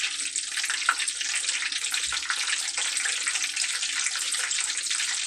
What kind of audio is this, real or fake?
real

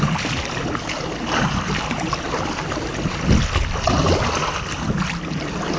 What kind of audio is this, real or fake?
real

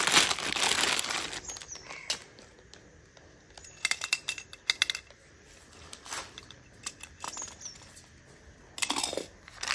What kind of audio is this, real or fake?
real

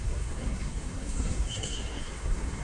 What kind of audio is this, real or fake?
fake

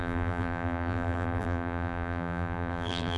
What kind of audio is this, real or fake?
fake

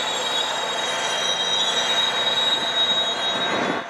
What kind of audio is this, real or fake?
real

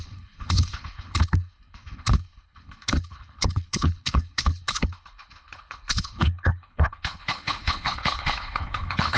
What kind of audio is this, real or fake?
fake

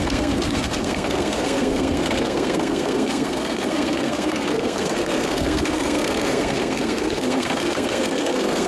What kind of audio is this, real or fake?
fake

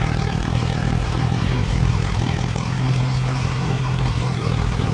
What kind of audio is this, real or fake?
fake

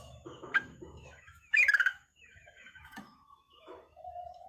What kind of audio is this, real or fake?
fake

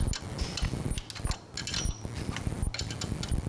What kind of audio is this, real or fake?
real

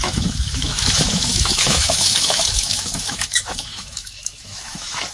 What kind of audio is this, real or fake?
fake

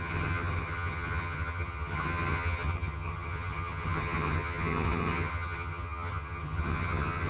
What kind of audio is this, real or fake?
fake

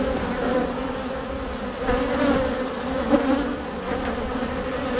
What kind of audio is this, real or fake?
real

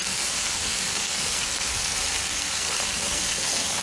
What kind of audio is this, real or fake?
fake